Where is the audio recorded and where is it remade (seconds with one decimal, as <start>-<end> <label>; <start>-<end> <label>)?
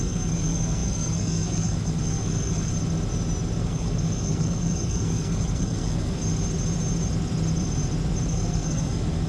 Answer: 0.0-2.7 remade; 2.7-3.6 recorded; 3.6-6.2 remade; 6.2-8.3 recorded; 8.3-9.3 remade